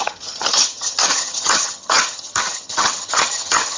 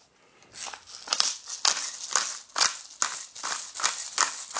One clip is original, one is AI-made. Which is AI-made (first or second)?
first